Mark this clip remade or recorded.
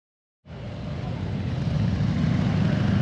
recorded